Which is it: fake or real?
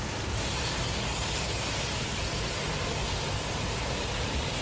real